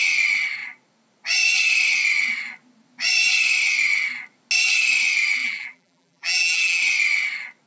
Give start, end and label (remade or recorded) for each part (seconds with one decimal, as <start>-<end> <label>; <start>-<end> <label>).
0.0-5.4 recorded; 5.4-6.8 remade; 6.8-7.7 recorded